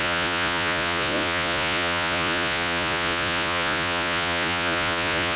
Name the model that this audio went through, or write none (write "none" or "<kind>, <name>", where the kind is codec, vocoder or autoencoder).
vocoder, Vocos